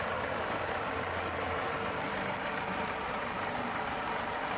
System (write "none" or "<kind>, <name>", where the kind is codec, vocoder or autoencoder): vocoder, BigVGAN v2